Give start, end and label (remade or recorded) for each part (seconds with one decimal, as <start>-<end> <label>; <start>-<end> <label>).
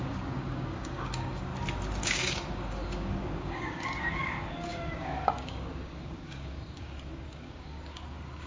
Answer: 0.0-1.5 remade; 1.5-2.0 recorded; 2.0-8.5 remade